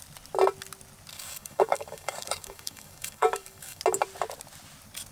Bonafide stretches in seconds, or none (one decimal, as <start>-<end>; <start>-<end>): 0.0-1.1; 3.8-5.1